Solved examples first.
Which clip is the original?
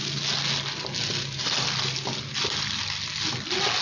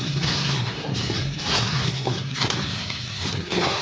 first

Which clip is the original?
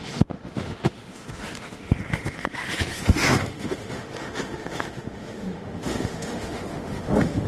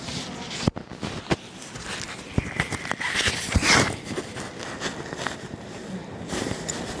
second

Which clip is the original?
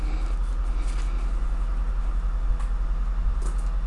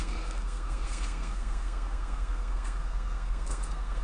first